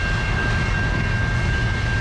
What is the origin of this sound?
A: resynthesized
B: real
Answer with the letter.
B